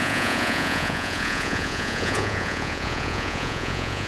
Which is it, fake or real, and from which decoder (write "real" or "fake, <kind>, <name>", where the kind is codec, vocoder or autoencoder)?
fake, vocoder, Vocos